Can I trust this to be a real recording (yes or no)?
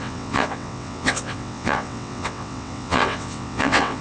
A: no